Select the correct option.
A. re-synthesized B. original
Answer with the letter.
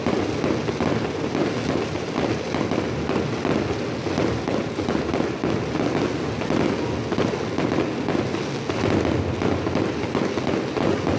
B